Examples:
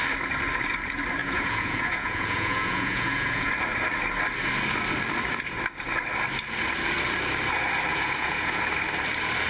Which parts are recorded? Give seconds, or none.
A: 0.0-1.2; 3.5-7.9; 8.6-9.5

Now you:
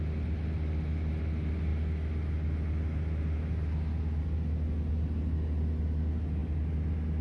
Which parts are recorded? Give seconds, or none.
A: 0.0-7.2

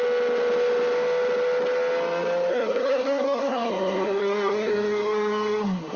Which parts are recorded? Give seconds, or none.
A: 0.0-2.5